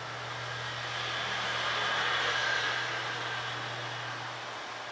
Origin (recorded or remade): recorded